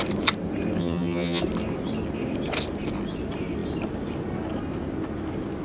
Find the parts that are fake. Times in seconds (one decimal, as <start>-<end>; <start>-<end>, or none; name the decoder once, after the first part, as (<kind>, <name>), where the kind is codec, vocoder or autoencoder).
0.8-1.4 (vocoder, HiFi-GAN)